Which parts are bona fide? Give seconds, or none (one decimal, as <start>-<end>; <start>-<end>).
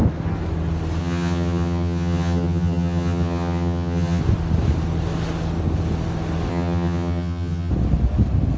0.0-1.0; 4.2-6.5; 7.7-8.6